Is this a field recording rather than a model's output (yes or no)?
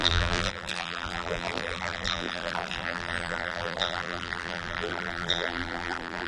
no